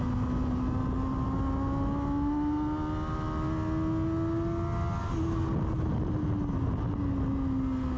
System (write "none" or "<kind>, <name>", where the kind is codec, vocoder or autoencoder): none